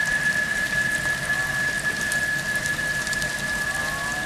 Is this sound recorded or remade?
recorded